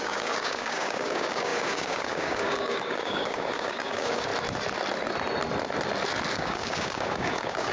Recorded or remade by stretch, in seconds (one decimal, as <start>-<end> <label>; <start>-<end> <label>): 0.0-4.3 remade; 4.3-6.3 recorded; 6.3-7.7 remade